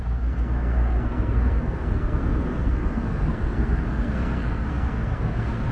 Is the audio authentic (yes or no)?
no